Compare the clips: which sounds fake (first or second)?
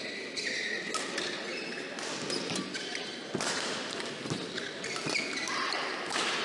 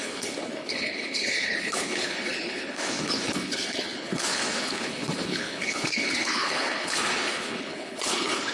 second